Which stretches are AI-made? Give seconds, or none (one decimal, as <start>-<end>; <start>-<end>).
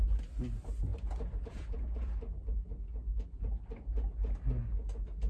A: 0.9-2.2